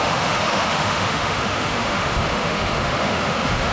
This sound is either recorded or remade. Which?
remade